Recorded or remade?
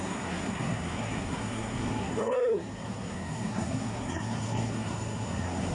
remade